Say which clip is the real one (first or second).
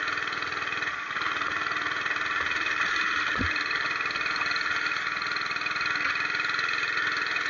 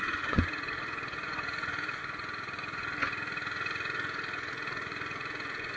first